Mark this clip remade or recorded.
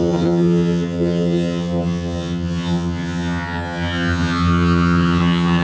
remade